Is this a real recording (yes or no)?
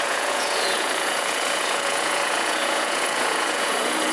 no